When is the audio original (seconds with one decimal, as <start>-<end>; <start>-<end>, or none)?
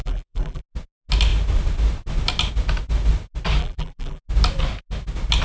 0.6-3.6; 4.2-5.4